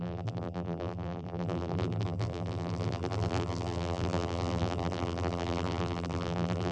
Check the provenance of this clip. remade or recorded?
remade